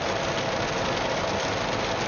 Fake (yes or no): yes